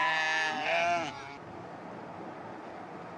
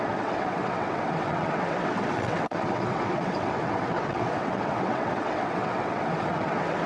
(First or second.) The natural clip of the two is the first